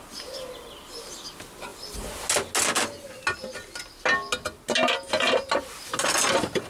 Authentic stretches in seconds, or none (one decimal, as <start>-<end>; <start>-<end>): 0.0-6.7